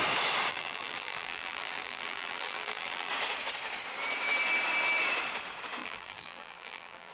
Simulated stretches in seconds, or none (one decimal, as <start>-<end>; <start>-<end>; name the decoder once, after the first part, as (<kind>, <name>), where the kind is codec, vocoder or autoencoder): 0.5-3.1 (vocoder, BigVGAN v2); 5.8-7.1

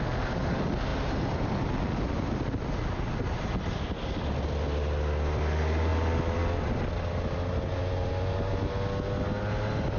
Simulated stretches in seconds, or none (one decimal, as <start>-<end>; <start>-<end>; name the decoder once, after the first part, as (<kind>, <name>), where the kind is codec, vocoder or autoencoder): none

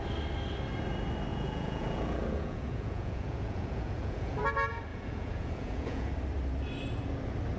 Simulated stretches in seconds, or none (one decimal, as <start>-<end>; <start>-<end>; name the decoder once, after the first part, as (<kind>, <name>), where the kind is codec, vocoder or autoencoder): 1.3-4.4 (vocoder, Vocos); 4.9-6.1

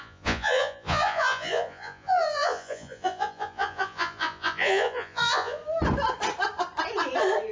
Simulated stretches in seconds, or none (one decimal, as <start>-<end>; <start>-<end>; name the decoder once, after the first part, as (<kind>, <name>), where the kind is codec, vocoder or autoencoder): 0.0-5.6 (vocoder, Vocos)

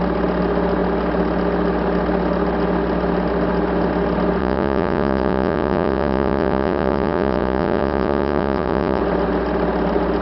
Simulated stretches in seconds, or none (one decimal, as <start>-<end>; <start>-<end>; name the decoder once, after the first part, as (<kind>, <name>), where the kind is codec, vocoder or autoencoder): 4.4-9.0 (vocoder, Vocos)

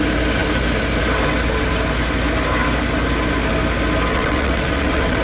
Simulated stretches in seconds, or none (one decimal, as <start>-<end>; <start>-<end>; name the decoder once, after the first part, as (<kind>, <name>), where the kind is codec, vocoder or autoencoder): 4.1-5.2 (vocoder, WaveNeXt)

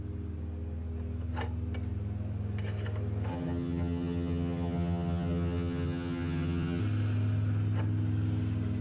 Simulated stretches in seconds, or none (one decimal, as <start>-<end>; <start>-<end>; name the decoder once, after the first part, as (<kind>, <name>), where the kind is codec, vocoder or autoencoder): 3.3-6.8 (vocoder, HiFi-GAN)